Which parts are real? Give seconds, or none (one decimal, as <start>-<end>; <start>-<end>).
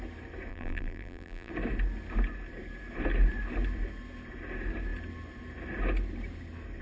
0.0-0.5; 1.5-6.8